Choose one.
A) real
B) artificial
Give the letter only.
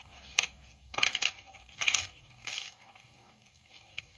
B